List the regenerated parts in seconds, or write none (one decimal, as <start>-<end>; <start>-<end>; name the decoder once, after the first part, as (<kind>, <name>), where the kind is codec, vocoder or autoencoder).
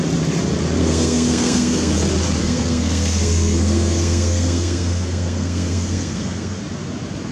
0.8-1.9 (codec, SNAC); 2.4-6.6